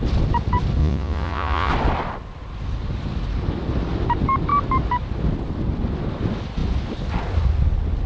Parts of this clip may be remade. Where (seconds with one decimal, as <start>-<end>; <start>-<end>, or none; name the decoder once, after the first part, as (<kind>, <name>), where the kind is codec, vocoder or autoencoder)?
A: 0.8-1.7 (vocoder, Vocos)